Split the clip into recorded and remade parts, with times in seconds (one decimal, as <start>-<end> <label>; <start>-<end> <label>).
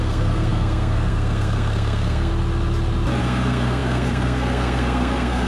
0.0-2.3 remade; 2.3-3.2 recorded; 3.2-5.5 remade